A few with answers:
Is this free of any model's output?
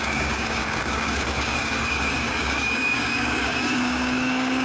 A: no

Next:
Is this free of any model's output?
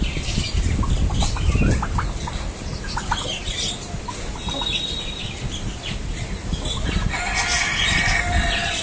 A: yes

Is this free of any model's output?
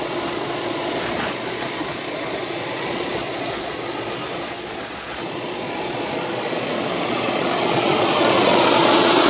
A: no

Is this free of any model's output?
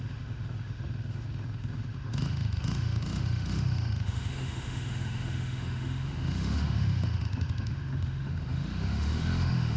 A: no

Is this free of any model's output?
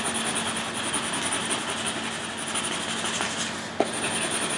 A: yes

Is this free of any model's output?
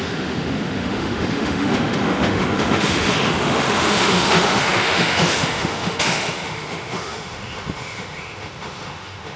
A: no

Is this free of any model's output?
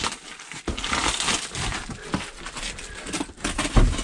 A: yes